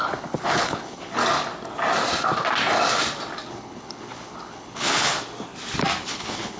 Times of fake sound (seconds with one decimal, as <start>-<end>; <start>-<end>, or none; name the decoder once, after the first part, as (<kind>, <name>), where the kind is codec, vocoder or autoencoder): 0.0-1.2 (codec, HILCodec); 3.5-5.1; 6.1-6.6